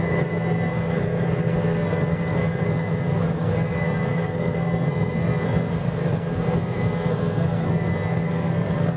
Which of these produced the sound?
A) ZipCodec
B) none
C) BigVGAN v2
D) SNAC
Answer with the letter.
D